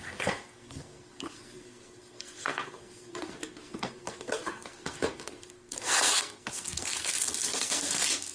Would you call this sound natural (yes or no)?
no